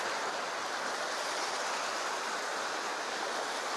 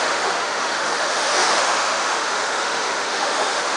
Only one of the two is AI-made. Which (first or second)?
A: second